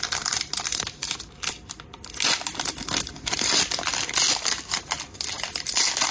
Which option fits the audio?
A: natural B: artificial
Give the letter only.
A